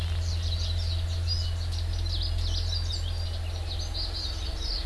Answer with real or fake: real